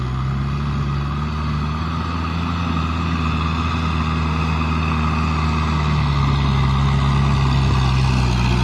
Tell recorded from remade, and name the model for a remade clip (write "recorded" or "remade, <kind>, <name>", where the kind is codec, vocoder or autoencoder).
recorded